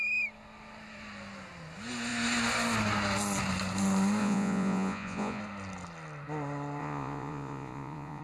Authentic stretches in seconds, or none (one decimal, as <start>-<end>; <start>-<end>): 0.0-4.2; 5.4-6.8